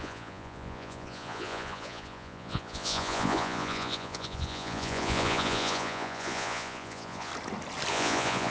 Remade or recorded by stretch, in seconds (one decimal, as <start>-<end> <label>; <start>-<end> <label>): 0.0-7.3 remade; 7.3-7.9 recorded; 7.9-8.5 remade